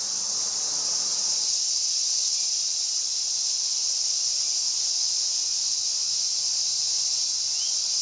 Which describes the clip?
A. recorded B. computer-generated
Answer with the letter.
A